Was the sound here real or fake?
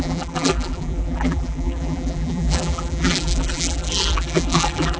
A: fake